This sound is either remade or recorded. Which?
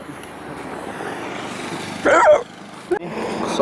recorded